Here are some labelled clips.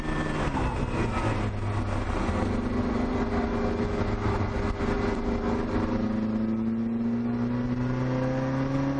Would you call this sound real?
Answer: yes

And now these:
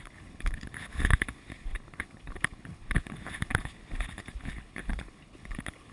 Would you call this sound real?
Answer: no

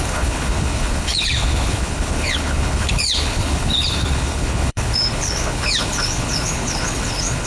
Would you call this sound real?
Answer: no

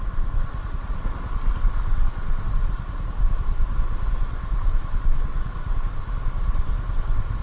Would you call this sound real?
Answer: yes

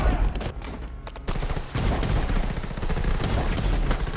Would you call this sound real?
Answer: yes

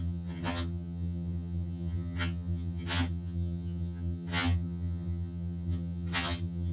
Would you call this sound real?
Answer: no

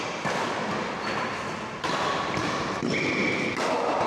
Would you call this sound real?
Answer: yes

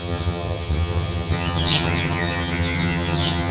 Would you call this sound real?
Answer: no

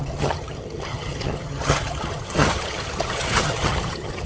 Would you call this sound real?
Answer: no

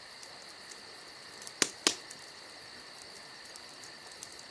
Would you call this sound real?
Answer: yes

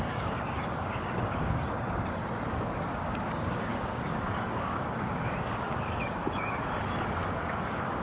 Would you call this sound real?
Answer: no